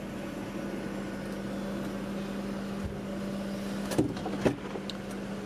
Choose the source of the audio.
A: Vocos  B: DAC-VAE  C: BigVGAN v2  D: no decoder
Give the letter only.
D